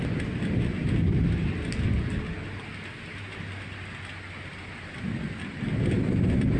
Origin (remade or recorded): recorded